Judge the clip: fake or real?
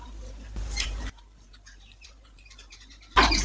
fake